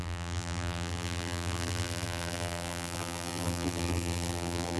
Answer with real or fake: fake